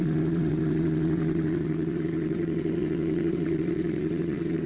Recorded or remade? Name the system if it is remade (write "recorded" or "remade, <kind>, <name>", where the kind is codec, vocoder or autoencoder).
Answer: remade, vocoder, WaveNeXt